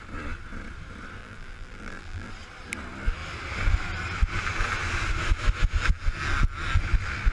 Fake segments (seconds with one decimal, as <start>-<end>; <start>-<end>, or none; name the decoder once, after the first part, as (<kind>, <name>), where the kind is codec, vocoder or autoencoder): 1.2-2.3 (vocoder, BigVGAN v2)